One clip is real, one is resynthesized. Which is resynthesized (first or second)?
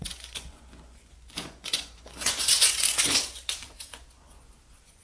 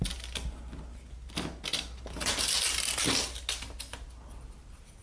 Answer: first